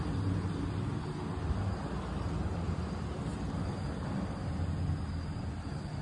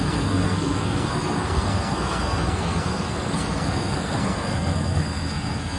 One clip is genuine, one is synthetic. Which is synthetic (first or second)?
second